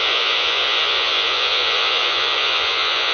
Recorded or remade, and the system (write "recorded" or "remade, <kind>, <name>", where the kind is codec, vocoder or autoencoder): remade, vocoder, Vocos